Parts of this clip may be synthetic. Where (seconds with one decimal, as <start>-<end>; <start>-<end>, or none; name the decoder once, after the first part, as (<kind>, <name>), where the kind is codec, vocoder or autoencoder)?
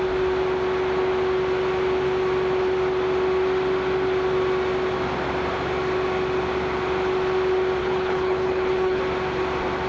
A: 7.8-9.0 (codec, HILCodec)